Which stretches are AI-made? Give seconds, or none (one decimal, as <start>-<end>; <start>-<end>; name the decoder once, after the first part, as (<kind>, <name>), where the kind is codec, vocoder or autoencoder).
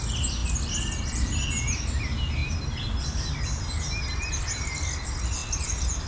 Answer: none